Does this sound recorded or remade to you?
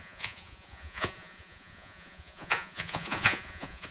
remade